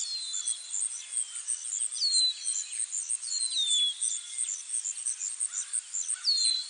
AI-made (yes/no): no